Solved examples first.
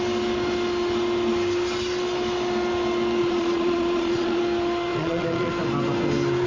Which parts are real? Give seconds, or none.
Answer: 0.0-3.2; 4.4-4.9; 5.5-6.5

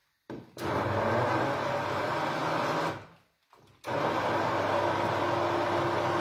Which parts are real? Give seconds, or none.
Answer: 0.0-6.2

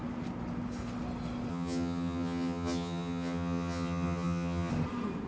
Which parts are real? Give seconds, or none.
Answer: 0.0-1.5; 4.7-5.3

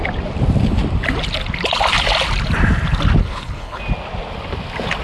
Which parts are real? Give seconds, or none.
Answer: 0.0-3.2; 3.8-5.0

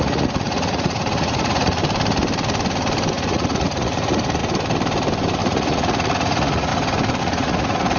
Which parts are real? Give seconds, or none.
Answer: 1.8-3.1; 4.4-5.4; 6.7-7.2